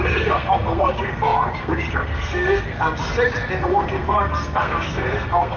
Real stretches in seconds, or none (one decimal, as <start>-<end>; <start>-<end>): 3.0-3.6